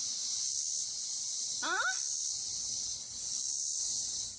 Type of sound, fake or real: real